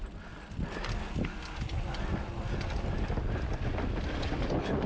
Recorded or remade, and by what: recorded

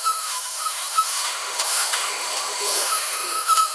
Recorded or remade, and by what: remade, autoencoder, DAC-VAE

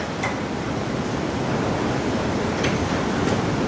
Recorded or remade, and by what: remade, vocoder, BigVGAN v2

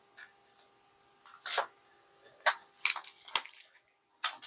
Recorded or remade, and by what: recorded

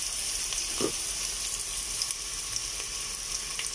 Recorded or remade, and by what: recorded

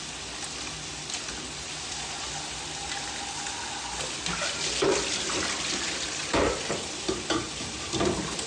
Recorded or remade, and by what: recorded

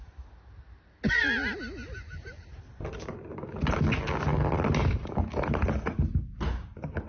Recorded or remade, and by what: recorded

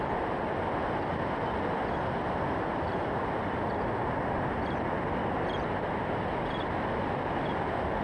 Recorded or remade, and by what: recorded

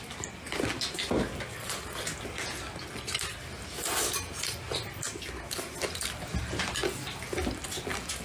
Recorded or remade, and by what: recorded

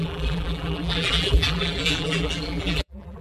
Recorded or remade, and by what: remade, vocoder, BigVGAN v2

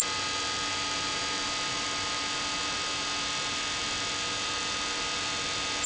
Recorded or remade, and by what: recorded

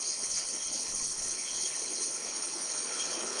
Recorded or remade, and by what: remade, codec, HILCodec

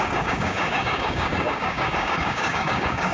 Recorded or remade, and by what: remade, codec, DAC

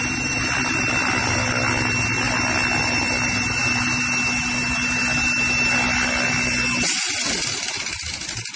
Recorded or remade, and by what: recorded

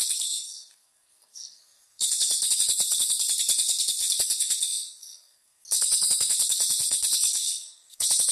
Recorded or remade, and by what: remade, codec, SNAC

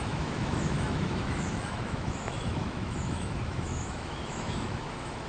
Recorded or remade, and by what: remade, autoencoder, DAC-VAE